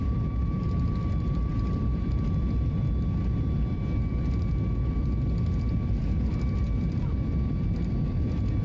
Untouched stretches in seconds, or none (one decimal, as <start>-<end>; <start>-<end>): none